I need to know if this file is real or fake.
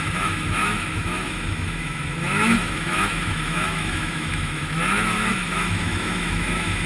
fake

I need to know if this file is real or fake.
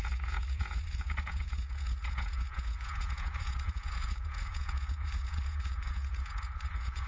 fake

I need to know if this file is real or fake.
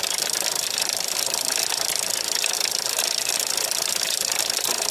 real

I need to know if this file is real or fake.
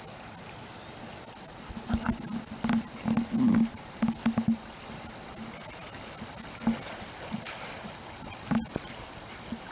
real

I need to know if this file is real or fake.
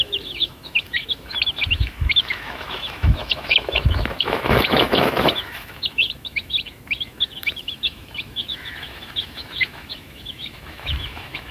fake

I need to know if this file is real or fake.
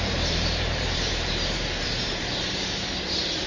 fake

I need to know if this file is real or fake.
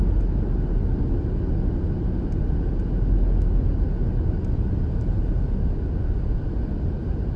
real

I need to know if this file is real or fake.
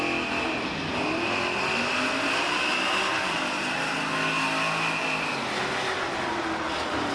real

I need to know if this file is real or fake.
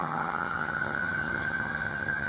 fake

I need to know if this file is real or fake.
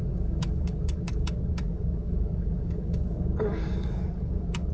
fake